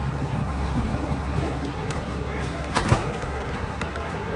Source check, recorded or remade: remade